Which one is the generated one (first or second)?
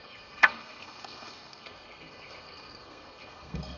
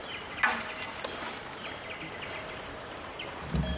first